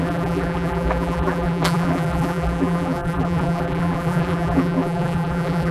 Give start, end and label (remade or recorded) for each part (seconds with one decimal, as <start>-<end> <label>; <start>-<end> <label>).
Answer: 0.0-5.7 remade